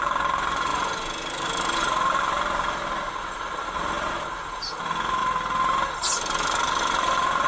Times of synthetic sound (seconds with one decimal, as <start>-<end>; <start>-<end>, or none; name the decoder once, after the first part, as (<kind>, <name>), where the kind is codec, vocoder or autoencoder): none